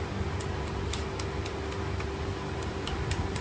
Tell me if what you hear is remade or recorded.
recorded